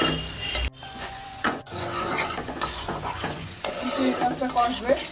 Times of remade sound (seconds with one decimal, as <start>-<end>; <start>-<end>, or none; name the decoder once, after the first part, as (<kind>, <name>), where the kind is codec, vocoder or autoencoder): 0.8-3.9 (vocoder, Vocos)